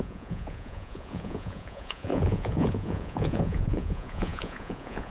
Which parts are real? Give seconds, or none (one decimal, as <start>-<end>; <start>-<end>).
none